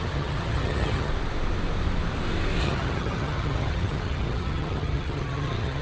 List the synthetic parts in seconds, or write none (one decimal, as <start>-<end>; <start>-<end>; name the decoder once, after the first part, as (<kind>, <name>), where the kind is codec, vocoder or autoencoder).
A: 0.0-1.1 (vocoder, HiFi-GAN); 2.6-5.8

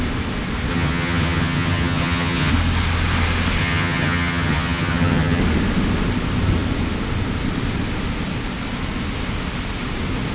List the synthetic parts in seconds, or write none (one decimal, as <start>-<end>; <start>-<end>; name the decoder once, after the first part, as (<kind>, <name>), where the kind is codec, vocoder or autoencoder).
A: 0.7-2.5 (vocoder, HiFi-GAN); 3.6-5.4

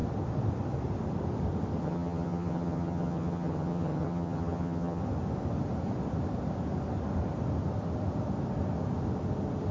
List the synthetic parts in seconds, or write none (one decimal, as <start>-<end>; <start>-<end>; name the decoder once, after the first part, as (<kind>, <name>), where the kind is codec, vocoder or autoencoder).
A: 1.8-5.0 (vocoder, HiFi-GAN)

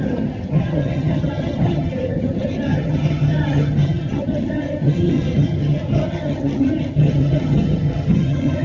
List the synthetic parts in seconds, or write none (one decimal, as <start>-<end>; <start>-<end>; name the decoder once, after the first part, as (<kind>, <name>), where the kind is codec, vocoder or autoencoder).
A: 0.0-8.6 (vocoder, HiFi-GAN)

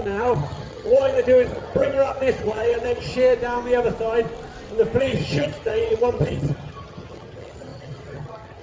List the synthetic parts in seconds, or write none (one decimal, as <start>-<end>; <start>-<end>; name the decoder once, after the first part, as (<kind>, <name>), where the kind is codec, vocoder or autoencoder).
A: 0.0-3.1 (vocoder, HiFi-GAN); 5.0-8.6

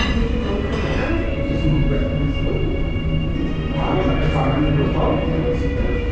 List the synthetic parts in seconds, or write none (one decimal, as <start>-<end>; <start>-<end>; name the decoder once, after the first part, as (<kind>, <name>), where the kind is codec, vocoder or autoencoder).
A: none

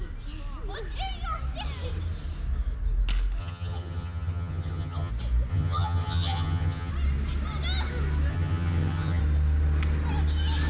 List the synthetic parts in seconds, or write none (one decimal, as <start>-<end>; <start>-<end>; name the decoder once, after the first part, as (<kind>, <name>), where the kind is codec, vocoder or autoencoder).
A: 3.4-5.1 (vocoder, HiFi-GAN); 5.5-6.9; 8.3-9.2